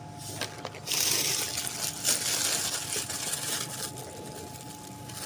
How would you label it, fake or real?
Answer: real